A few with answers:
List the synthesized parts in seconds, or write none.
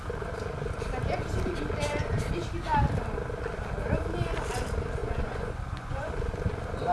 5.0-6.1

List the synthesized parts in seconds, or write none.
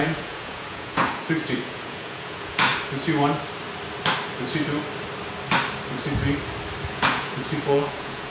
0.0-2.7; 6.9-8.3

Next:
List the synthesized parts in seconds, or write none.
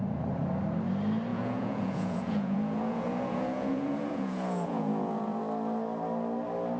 1.3-5.4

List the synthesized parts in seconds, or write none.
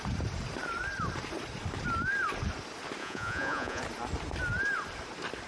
3.0-3.8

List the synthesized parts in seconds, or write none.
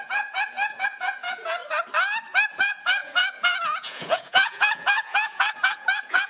0.0-1.6; 2.5-6.3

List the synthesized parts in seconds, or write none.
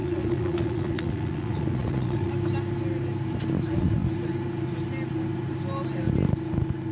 0.0-2.3